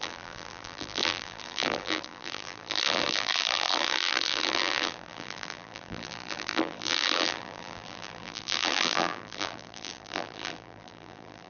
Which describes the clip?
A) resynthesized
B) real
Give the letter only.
A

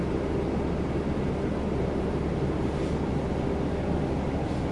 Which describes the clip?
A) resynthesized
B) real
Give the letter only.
B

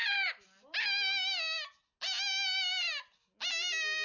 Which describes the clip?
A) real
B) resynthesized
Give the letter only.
A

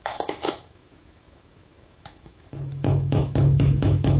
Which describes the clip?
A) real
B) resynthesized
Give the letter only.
B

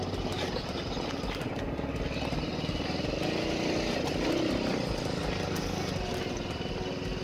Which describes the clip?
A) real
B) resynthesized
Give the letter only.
A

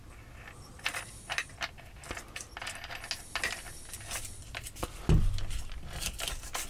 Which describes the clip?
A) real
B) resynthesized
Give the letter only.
A